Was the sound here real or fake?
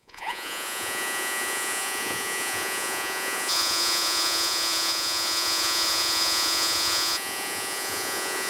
fake